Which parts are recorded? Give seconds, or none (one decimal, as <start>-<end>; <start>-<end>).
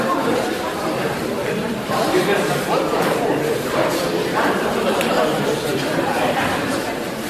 none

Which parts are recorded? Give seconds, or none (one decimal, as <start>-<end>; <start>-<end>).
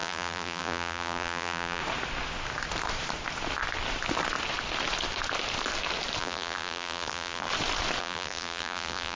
1.8-6.2; 7.5-8.0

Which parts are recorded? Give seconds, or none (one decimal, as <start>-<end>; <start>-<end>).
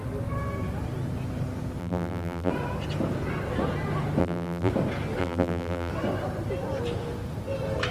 0.0-1.8; 2.5-4.2; 4.7-5.2; 5.9-7.9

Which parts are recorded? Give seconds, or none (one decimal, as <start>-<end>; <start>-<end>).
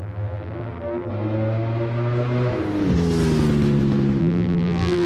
1.1-4.2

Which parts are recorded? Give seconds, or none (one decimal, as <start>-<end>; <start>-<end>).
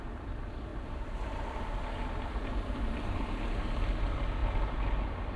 0.7-3.9; 4.4-5.4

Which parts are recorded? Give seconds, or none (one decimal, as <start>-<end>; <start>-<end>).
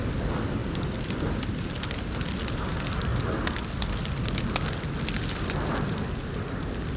0.0-7.0